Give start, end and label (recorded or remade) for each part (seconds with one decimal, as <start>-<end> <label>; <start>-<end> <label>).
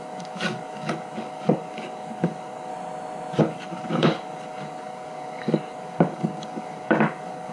0.0-2.7 remade; 2.7-3.4 recorded; 3.4-7.5 remade